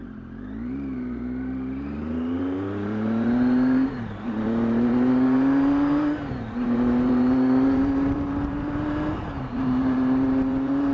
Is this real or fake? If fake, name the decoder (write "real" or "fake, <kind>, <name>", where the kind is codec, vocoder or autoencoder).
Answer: fake, vocoder, BigVGAN v2